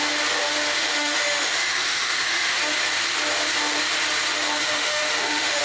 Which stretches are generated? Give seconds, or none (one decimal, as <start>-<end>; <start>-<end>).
0.8-2.6; 4.6-5.6

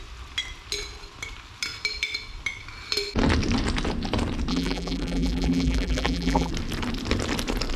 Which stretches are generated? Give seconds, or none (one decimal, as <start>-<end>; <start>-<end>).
4.5-6.5

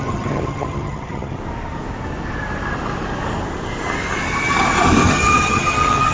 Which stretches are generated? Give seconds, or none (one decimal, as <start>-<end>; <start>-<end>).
0.0-1.4; 5.1-6.1

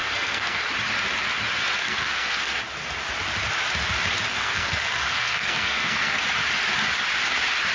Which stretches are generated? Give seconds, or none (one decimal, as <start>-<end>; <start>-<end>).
0.0-0.6; 1.8-2.6; 4.3-6.2

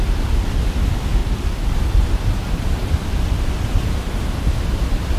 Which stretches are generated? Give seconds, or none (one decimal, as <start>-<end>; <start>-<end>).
0.0-1.2; 1.7-5.2

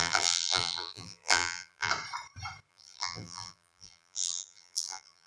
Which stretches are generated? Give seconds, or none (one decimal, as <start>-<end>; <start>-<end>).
0.0-1.9; 2.7-5.3

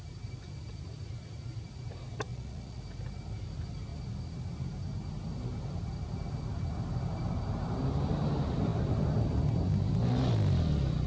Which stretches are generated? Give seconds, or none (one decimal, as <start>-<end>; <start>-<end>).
2.3-2.8

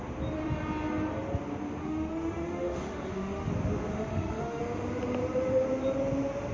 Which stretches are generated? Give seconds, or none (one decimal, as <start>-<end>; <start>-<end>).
1.8-3.5; 3.9-4.6